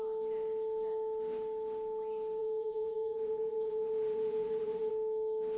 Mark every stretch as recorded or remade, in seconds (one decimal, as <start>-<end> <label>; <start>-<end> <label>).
0.0-2.4 recorded; 2.4-4.9 remade; 4.9-5.6 recorded